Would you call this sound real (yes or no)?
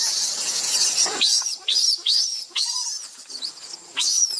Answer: no